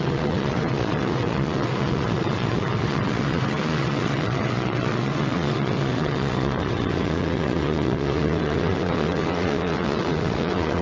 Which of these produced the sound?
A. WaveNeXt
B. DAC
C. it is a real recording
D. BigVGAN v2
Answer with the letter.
A